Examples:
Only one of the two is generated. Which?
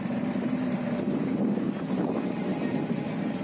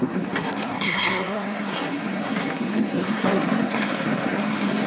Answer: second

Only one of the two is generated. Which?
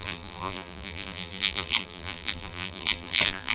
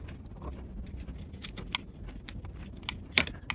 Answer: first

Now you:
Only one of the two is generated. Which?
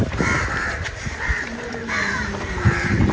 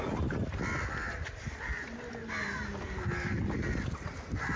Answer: first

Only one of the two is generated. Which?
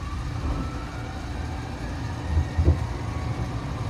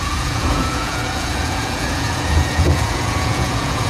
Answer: second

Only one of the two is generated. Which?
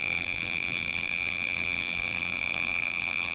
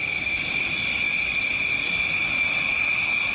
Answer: first